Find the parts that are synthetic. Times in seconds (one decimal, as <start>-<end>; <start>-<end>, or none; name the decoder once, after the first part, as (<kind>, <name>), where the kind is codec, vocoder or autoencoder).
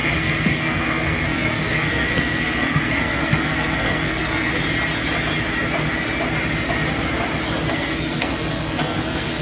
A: 0.0-4.5 (codec, SNAC); 7.7-9.4